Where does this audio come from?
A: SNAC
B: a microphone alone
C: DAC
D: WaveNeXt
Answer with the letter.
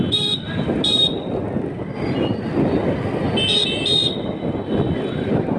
B